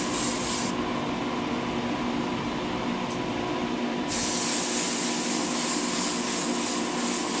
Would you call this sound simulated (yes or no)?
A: no